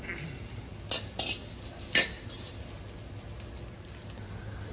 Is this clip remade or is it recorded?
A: recorded